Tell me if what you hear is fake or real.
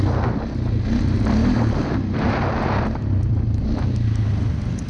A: real